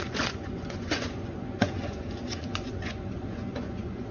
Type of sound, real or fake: fake